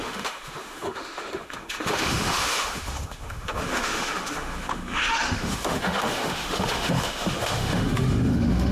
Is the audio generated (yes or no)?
yes